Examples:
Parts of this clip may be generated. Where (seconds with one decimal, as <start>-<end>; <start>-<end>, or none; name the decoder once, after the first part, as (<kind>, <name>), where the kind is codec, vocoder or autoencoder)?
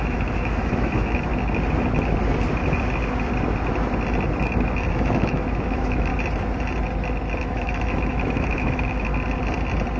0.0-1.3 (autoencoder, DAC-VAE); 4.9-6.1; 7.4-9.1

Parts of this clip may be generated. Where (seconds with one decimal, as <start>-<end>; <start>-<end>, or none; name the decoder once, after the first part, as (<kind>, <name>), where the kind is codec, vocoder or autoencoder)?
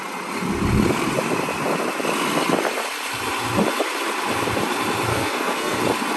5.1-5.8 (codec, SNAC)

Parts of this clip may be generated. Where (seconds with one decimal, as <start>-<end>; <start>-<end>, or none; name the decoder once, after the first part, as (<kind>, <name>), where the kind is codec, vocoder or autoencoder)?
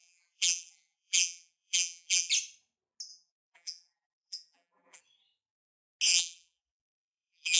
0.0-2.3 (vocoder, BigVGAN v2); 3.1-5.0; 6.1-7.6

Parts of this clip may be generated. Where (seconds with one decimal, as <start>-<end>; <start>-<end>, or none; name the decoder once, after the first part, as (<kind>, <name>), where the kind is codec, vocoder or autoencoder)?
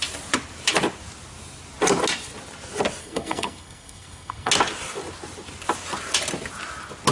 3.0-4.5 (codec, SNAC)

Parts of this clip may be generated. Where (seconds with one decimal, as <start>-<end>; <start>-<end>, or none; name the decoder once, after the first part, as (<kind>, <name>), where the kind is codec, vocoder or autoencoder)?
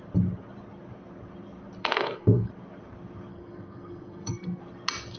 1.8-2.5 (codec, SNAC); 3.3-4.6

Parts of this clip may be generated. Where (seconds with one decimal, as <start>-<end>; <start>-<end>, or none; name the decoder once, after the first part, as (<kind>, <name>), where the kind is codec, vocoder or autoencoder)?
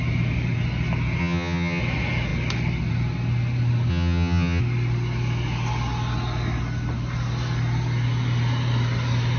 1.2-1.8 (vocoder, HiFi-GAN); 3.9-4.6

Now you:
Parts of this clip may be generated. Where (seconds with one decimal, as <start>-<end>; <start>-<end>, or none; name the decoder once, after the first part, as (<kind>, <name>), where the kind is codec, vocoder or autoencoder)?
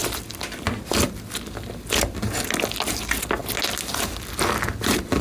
none